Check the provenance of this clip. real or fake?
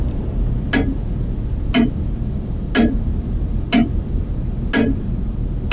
real